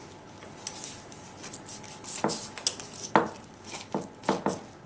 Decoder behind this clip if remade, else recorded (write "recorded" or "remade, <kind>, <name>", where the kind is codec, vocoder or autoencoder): recorded